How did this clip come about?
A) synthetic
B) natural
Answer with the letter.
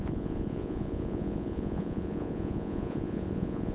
A